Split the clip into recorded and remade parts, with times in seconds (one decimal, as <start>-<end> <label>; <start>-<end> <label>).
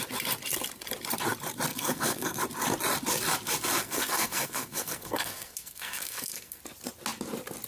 0.0-1.7 recorded; 1.7-2.4 remade; 2.4-3.8 recorded; 3.8-6.6 remade; 6.6-7.7 recorded